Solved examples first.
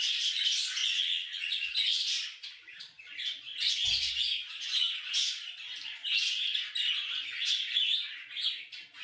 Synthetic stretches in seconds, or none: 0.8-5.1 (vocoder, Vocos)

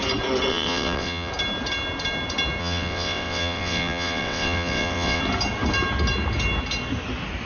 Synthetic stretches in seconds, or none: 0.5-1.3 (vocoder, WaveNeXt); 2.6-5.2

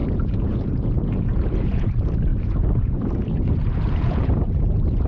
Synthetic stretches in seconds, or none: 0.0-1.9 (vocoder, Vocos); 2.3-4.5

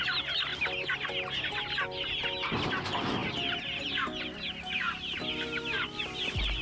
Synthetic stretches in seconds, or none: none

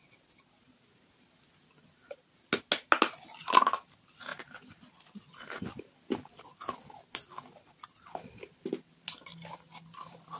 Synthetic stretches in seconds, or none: none